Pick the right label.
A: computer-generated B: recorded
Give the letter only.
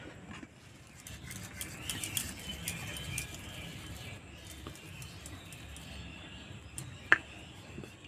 B